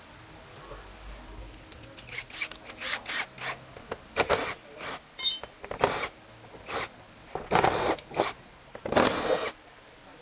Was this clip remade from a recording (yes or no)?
no